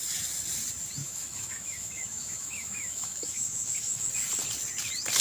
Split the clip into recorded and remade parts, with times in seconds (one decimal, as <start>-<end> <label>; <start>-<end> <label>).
0.0-1.0 recorded; 1.0-4.1 remade; 4.1-5.2 recorded